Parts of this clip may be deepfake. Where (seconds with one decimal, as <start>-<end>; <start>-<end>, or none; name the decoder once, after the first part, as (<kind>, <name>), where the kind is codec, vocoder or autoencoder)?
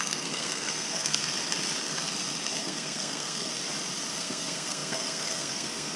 0.0-1.4 (codec, SNAC); 2.6-3.5; 4.1-6.0